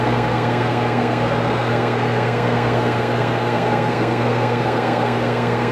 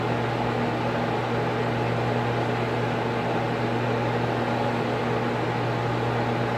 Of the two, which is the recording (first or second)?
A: second